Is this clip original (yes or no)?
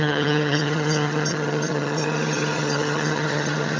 no